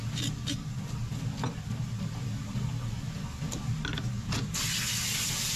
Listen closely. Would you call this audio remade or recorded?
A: recorded